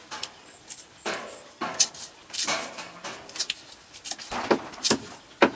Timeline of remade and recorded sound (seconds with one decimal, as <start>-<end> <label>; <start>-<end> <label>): 0.0-0.4 recorded; 0.4-2.8 remade; 2.8-5.6 recorded